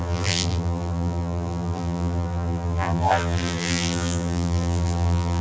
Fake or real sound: fake